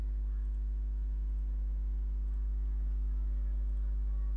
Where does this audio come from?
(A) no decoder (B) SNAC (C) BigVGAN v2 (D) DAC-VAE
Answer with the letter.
A